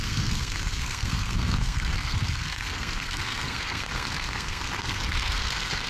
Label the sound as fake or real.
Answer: fake